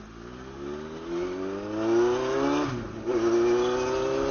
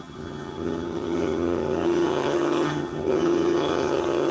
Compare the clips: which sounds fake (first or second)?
second